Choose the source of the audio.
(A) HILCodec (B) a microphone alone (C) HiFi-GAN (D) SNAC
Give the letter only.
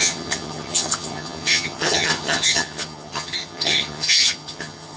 C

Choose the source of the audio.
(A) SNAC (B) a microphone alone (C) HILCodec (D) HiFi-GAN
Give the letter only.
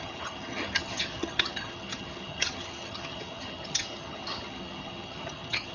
D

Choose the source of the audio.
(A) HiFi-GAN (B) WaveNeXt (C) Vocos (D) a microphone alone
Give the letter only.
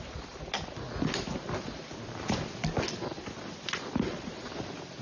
D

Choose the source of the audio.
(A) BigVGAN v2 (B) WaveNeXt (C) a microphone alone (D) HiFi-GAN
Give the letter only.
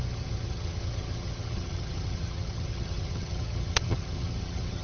D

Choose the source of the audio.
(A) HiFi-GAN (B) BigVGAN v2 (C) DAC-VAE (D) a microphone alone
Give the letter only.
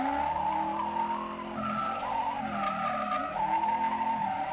D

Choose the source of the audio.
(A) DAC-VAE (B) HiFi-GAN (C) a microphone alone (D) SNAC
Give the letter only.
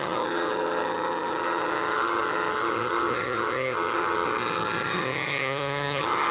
B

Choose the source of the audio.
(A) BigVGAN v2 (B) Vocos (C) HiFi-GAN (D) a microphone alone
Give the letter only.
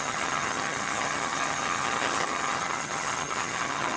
C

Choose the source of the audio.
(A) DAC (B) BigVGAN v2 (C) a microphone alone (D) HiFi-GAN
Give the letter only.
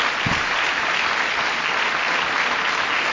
C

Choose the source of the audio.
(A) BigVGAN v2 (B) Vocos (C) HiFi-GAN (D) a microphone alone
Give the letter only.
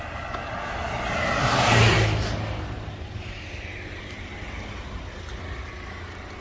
D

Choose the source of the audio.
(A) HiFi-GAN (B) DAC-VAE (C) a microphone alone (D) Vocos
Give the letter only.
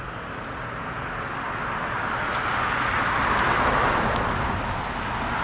C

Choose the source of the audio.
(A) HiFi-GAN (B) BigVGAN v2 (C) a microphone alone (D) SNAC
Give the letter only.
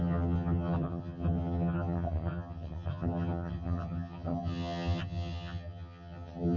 A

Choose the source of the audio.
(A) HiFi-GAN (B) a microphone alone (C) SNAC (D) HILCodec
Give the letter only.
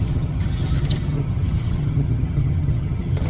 A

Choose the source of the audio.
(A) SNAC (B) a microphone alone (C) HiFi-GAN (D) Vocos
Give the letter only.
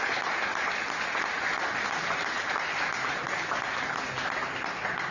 B